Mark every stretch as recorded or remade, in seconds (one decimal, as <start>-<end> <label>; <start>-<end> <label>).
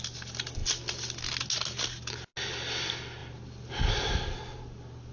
0.0-5.1 recorded